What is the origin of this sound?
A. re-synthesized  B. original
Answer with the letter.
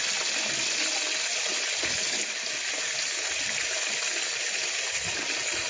B